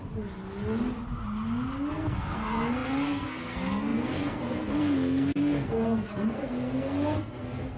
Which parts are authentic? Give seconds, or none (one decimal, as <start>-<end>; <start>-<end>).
0.0-1.9